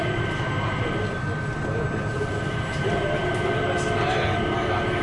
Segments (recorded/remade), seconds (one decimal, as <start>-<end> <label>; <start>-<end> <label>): 0.0-0.8 remade; 0.8-2.3 recorded; 2.3-3.3 remade; 3.3-5.0 recorded